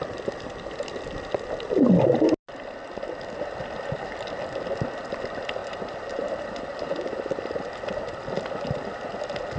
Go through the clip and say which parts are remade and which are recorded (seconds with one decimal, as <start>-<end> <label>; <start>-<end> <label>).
0.0-5.6 recorded; 5.6-7.5 remade; 7.5-9.6 recorded